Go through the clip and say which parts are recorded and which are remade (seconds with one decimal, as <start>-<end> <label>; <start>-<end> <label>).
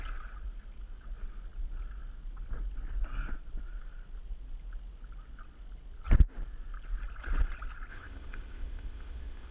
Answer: 0.0-7.9 recorded; 7.9-9.5 remade